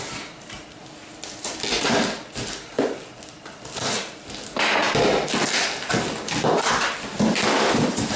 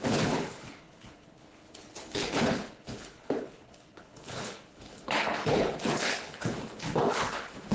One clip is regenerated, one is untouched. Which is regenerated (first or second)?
second